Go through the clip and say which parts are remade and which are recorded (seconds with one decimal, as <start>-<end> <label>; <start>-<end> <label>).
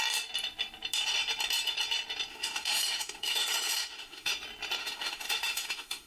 0.0-2.3 recorded; 2.3-4.3 remade; 4.3-4.8 recorded; 4.8-6.1 remade